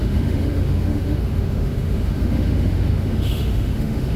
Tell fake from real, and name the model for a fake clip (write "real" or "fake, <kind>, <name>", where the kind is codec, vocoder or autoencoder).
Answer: fake, autoencoder, DAC-VAE